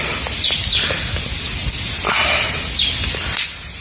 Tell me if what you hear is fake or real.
real